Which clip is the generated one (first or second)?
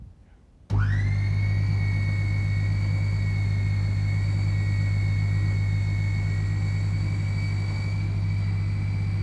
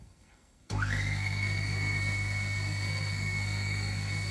second